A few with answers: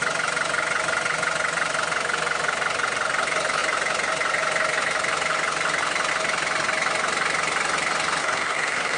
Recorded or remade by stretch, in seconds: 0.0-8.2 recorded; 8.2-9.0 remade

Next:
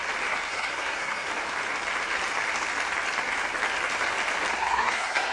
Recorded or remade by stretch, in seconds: 0.0-0.5 recorded; 0.5-1.3 remade; 1.3-4.5 recorded; 4.5-5.3 remade